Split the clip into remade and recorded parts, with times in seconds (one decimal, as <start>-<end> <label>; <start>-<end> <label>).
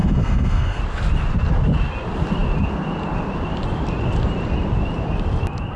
0.0-0.8 remade; 0.8-5.8 recorded